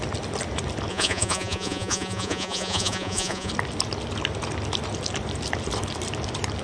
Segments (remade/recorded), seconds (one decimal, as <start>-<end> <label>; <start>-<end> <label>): 0.0-0.9 recorded; 0.9-3.5 remade; 3.5-6.6 recorded